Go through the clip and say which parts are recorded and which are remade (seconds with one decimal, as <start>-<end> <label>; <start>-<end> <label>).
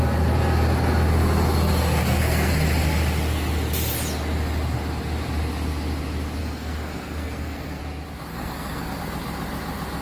0.0-2.0 recorded; 2.0-2.5 remade; 2.5-6.4 recorded; 6.4-7.8 remade; 7.8-8.3 recorded; 8.3-9.0 remade; 9.0-10.0 recorded